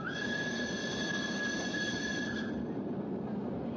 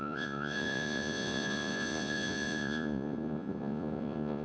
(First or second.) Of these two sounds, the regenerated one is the second